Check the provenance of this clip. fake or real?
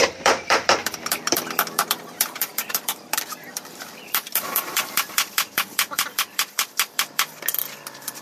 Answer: fake